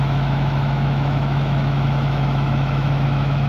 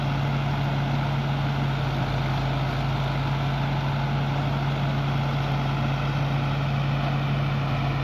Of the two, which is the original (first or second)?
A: second